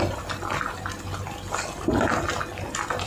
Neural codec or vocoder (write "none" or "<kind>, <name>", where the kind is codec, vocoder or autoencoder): none